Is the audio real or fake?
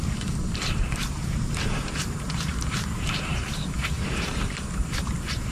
fake